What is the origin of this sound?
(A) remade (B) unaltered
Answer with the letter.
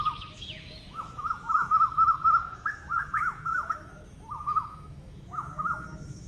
A